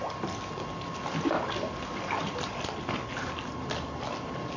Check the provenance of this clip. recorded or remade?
recorded